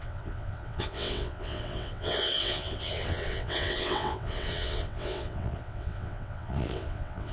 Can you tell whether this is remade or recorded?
remade